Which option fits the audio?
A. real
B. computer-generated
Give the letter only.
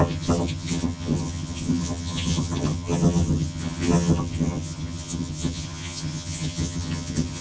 B